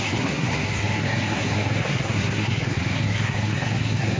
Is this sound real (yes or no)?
no